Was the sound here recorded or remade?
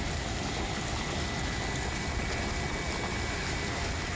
recorded